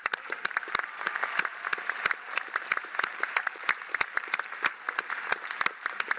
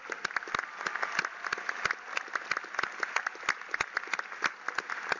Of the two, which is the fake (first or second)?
first